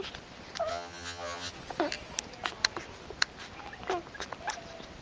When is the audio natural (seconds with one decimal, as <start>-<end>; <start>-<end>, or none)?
0.0-0.7; 1.5-5.0